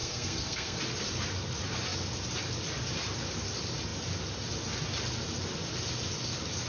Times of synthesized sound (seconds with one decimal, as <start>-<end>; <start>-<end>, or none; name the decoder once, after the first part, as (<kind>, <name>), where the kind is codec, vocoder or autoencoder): 0.0-0.8 (codec, SNAC)